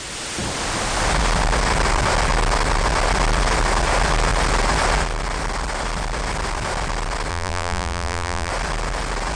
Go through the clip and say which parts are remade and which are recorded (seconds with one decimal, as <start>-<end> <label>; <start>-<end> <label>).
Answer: 0.0-7.3 recorded; 7.3-8.5 remade; 8.5-9.3 recorded